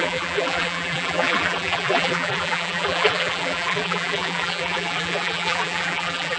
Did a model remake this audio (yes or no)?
yes